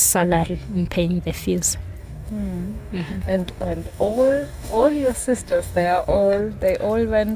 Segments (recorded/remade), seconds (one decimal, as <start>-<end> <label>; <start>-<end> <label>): 0.0-0.9 remade; 0.9-2.0 recorded; 2.0-6.4 remade; 6.4-7.4 recorded